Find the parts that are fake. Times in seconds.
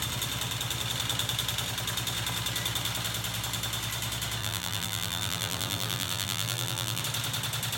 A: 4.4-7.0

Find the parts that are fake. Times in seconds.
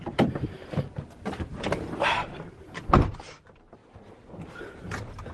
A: 1.5-2.1; 3.8-5.3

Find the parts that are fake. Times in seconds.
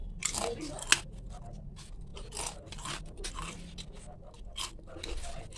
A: 2.1-3.3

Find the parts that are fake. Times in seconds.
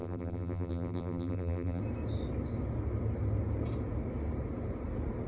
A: 0.0-1.8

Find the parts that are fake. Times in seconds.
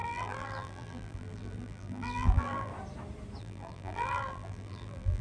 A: 0.0-2.7; 3.4-5.2